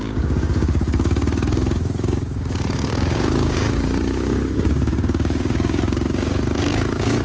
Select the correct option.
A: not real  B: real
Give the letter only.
A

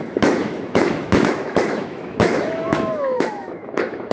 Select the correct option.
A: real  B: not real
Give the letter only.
B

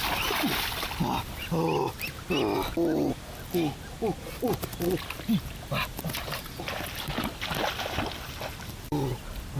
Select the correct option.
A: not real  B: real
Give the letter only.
B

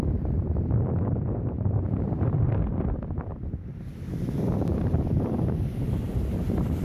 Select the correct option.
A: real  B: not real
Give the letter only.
B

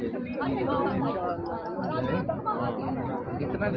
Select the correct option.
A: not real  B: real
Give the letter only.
B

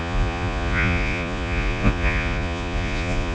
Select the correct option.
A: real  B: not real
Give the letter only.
B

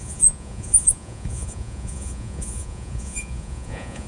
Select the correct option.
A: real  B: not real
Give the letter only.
B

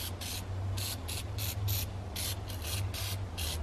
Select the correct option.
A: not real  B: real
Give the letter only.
B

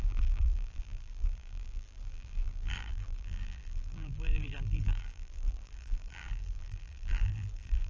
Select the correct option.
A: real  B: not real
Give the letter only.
B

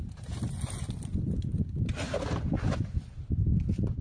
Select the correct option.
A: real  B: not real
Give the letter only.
A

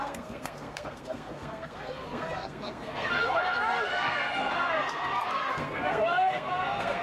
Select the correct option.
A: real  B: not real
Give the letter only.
B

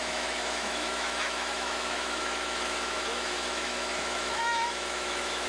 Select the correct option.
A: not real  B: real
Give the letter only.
A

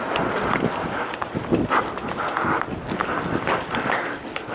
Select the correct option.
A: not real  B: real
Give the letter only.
B